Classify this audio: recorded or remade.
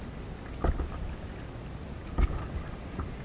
recorded